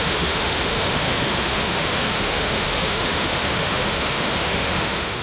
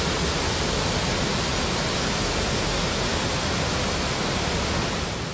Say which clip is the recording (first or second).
second